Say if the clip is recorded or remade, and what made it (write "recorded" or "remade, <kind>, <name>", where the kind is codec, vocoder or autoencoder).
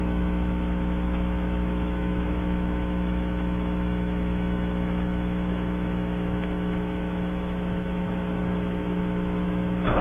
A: remade, autoencoder, DAC-VAE